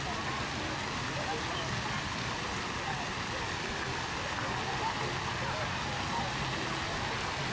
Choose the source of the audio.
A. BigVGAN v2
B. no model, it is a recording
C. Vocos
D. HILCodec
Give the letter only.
B